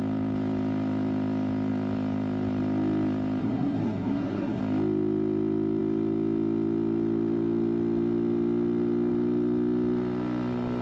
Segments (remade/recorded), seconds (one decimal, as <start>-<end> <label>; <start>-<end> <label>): 0.0-3.4 recorded; 3.4-4.6 remade; 4.6-10.8 recorded